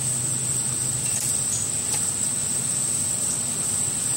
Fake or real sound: real